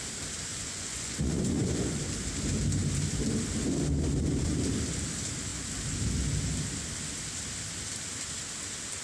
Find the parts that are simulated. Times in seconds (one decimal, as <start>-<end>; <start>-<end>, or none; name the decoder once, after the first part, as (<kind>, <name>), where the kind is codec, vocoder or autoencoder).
0.5-2.0 (vocoder, Vocos)